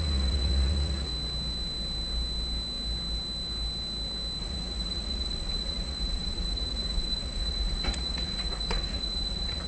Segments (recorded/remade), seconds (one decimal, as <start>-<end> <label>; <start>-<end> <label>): 0.0-1.1 remade; 1.1-4.4 recorded; 4.4-9.7 remade